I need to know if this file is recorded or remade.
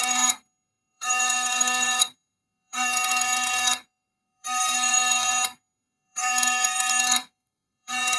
remade